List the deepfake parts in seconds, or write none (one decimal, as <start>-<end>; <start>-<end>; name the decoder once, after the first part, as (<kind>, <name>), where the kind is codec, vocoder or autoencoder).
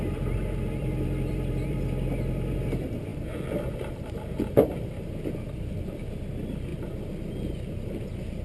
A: 0.0-6.7 (vocoder, BigVGAN v2); 7.8-8.4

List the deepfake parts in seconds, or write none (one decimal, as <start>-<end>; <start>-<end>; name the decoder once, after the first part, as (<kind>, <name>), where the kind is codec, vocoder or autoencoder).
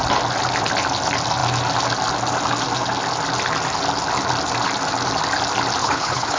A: 5.8-6.4 (codec, HILCodec)